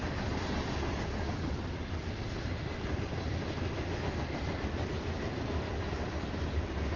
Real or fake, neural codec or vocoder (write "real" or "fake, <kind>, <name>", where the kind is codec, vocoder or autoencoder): real